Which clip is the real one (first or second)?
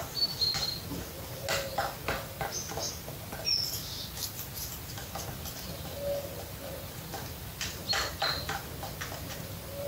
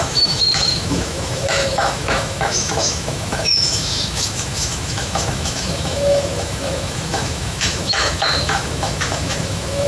first